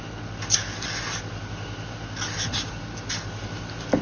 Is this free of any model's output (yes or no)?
yes